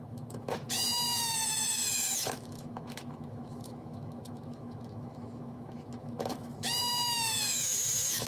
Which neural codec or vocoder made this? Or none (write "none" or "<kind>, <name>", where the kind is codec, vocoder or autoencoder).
autoencoder, DAC-VAE